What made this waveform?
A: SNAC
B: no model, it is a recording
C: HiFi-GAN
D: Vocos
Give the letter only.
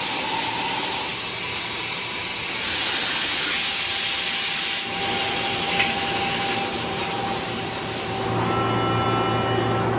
B